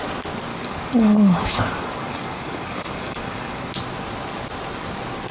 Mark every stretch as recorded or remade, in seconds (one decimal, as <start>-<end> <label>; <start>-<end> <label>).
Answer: 0.0-0.5 recorded; 0.5-3.7 remade; 3.7-5.3 recorded